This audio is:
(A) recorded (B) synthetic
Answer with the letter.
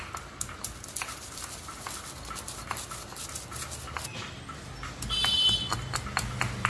A